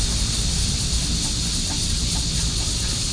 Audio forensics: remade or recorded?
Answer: recorded